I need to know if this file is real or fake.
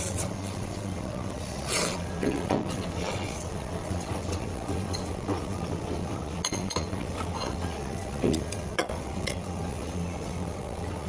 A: fake